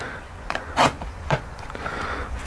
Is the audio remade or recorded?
remade